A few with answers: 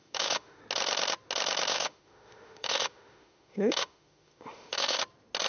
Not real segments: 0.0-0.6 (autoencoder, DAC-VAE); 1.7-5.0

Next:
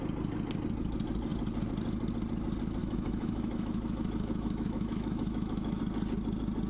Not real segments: 2.8-5.8 (autoencoder, DAC-VAE)